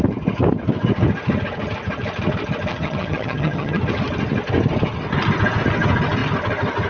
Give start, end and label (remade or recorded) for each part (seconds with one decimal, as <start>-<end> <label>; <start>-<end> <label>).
0.0-2.7 recorded; 2.7-3.8 remade; 3.8-6.9 recorded